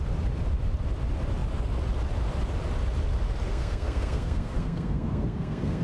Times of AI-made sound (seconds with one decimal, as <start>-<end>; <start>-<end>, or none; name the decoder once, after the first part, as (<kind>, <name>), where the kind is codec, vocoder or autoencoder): 3.5-5.8 (codec, SNAC)